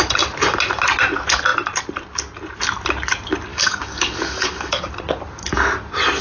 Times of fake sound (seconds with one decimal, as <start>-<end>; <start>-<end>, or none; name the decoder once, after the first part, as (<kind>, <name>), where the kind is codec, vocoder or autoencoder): 3.5-4.9 (codec, DAC)